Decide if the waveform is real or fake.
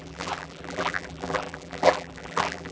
fake